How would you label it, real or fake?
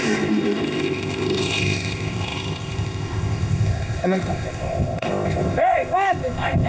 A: fake